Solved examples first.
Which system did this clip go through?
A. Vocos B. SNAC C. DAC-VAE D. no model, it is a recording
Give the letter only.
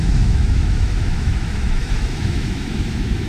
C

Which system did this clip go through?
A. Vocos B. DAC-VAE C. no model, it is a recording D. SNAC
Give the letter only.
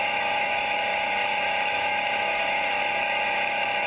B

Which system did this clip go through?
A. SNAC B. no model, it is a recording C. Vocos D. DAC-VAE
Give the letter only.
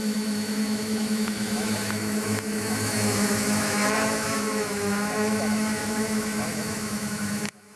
D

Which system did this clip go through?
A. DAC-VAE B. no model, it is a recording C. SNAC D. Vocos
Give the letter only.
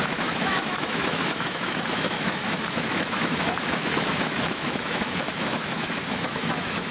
A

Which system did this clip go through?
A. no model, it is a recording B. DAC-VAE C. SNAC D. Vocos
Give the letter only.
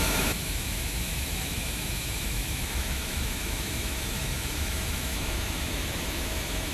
B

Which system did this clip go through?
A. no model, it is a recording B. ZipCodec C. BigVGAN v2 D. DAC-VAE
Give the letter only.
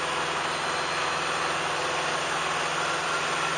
A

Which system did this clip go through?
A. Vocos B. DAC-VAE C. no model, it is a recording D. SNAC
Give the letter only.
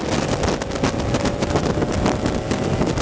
C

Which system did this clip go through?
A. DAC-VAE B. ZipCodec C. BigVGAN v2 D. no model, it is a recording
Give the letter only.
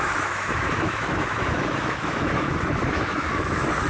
A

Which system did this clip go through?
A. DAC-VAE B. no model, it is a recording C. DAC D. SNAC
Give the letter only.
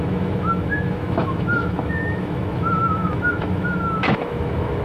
A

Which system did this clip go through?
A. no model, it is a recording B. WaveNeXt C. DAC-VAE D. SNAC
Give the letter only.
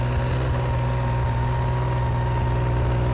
A